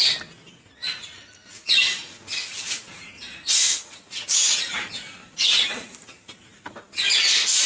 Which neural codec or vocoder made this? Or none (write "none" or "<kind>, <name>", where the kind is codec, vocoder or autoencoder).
none